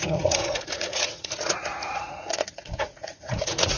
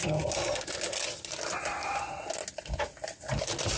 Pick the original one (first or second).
second